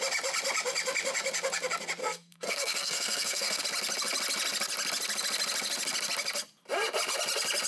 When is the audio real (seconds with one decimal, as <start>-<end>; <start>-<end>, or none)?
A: 0.0-2.0; 3.6-7.7